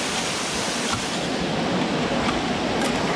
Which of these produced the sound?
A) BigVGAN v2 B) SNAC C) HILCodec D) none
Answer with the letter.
D